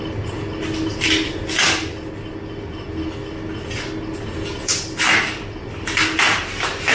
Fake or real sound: real